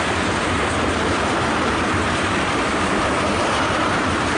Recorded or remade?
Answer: remade